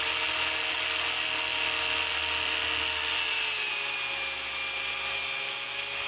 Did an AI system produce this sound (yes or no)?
no